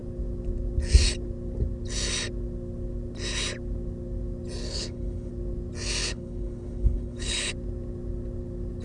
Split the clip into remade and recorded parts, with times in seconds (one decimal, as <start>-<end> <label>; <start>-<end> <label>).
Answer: 0.0-4.6 recorded; 4.6-5.3 remade; 5.3-6.0 recorded; 6.0-7.5 remade; 7.5-8.8 recorded

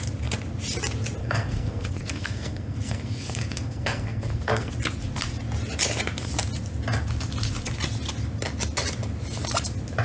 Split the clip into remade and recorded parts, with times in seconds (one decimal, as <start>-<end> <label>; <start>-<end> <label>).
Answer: 0.0-1.2 recorded; 1.2-4.7 remade; 4.7-10.0 recorded

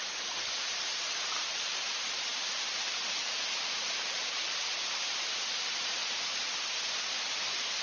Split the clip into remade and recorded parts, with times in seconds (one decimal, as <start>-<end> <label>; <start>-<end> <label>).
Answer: 0.0-6.0 remade; 6.0-7.1 recorded; 7.1-7.8 remade

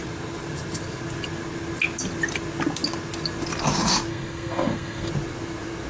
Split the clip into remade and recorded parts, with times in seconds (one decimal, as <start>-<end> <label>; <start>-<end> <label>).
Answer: 0.0-4.1 recorded; 4.1-5.1 remade; 5.1-5.9 recorded

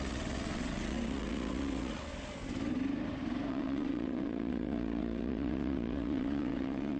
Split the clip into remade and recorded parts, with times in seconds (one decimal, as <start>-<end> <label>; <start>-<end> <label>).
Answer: 0.0-2.1 remade; 2.1-3.5 recorded; 3.5-7.0 remade

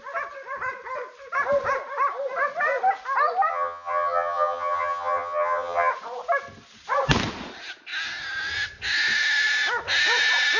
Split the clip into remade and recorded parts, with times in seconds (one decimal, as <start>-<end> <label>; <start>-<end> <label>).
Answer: 0.0-3.5 recorded; 3.5-5.9 remade; 5.9-10.6 recorded